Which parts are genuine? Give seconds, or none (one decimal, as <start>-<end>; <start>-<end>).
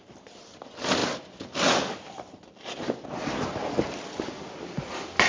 0.0-5.3